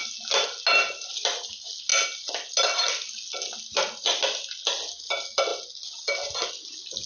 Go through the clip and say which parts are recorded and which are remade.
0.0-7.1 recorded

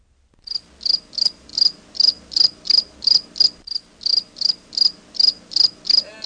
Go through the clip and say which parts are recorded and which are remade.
0.0-6.3 recorded

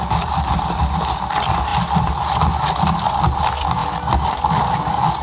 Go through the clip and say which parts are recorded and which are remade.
0.0-5.2 recorded

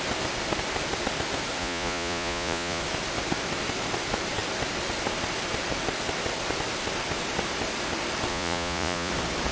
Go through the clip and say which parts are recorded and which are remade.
0.0-1.6 recorded; 1.6-2.8 remade; 2.8-8.3 recorded; 8.3-9.1 remade; 9.1-9.5 recorded